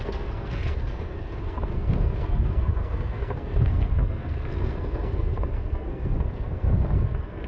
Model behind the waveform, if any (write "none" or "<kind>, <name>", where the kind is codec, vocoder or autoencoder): codec, SNAC